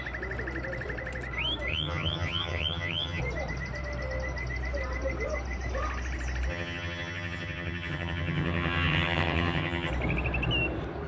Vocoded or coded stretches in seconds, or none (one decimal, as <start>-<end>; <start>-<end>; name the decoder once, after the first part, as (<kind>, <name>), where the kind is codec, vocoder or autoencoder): 1.7-3.2 (vocoder, HiFi-GAN); 6.5-9.9